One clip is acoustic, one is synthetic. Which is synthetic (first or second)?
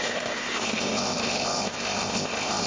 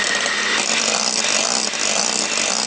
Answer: first